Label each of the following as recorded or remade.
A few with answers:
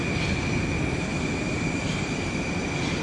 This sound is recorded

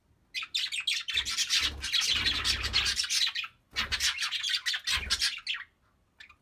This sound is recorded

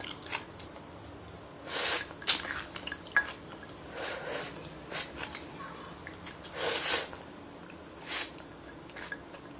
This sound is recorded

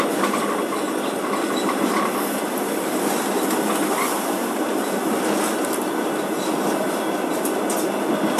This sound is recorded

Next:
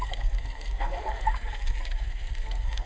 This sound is remade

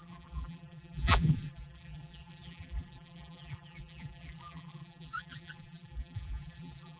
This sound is remade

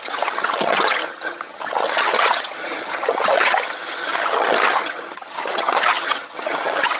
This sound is remade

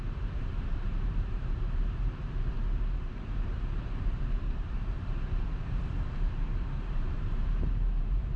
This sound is remade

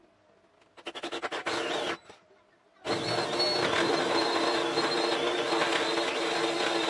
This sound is recorded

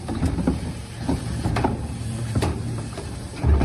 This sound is remade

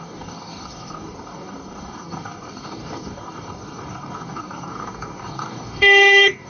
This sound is remade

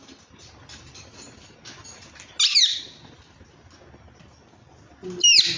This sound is recorded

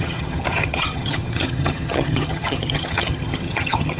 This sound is remade